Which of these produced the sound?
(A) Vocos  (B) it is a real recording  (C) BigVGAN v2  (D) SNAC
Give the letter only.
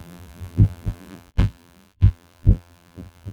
C